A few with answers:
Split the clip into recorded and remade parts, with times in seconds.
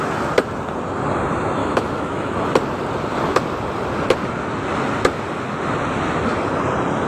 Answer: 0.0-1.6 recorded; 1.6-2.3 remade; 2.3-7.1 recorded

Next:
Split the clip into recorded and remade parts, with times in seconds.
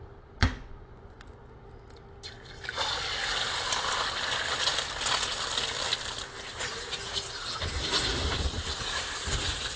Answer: 0.0-0.4 recorded; 0.4-1.5 remade; 1.5-9.8 recorded